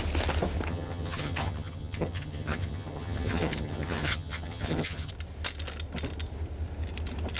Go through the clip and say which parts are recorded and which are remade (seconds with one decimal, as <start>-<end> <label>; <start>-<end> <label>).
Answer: 0.0-0.7 recorded; 0.7-5.1 remade; 5.1-7.4 recorded